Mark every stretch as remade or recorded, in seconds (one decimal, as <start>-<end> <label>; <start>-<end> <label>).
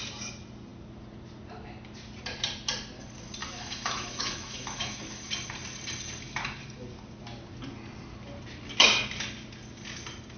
0.0-3.4 recorded; 3.4-5.3 remade; 5.3-10.4 recorded